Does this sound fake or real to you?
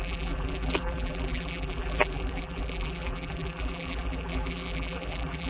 fake